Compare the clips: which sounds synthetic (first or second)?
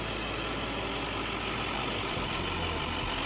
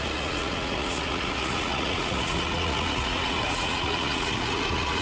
second